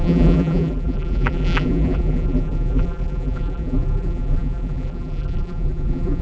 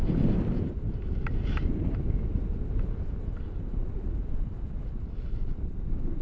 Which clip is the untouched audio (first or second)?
second